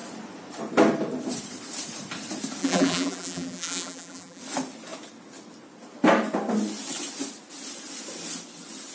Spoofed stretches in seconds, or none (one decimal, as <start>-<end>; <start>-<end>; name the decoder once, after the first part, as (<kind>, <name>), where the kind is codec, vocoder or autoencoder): 2.6-4.4 (vocoder, BigVGAN v2)